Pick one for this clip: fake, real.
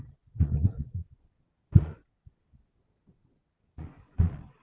fake